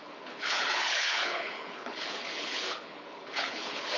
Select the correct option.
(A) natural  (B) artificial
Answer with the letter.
B